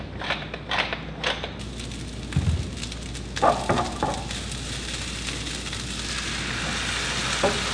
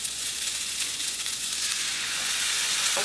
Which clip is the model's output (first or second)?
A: second